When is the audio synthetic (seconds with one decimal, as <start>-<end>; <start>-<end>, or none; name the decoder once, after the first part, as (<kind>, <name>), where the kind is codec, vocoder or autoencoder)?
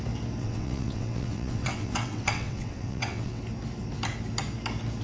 0.4-3.4 (vocoder, WaveNeXt)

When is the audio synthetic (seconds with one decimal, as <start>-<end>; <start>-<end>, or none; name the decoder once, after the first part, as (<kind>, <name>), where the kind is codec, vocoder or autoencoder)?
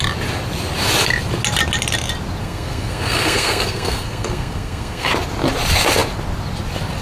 2.4-5.1 (codec, SNAC)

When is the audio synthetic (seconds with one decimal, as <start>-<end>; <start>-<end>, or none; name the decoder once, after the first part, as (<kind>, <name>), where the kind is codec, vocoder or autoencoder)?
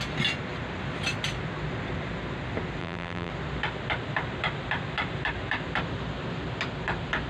2.8-3.3 (vocoder, BigVGAN v2)